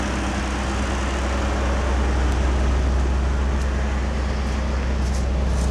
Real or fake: real